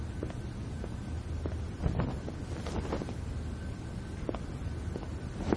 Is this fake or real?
real